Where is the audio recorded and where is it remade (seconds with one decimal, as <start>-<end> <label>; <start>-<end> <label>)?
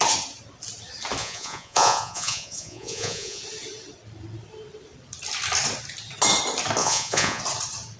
0.0-1.2 recorded; 1.2-3.4 remade; 3.4-6.8 recorded; 6.8-7.4 remade; 7.4-8.0 recorded